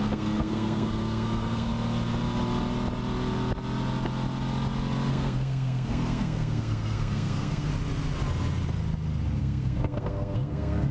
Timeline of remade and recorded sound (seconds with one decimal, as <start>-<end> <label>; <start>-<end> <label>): 0.0-1.7 remade; 1.7-5.1 recorded; 5.1-7.7 remade; 7.7-9.4 recorded; 9.4-10.9 remade